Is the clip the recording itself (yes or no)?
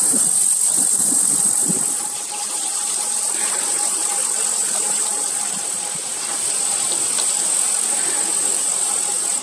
no